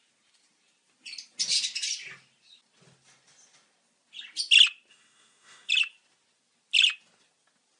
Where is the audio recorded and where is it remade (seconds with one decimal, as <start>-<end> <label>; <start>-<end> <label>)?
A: 0.0-4.9 recorded; 4.9-5.7 remade; 5.7-7.8 recorded

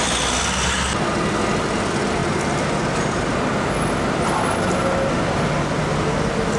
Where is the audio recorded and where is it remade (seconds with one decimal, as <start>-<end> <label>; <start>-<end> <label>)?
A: 0.0-6.6 recorded